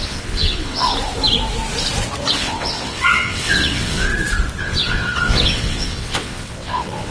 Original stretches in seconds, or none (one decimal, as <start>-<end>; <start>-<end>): 0.9-2.3; 4.1-4.6